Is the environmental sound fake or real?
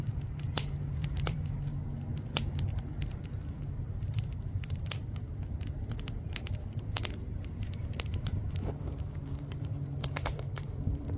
fake